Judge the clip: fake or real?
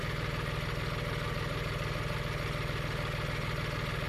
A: real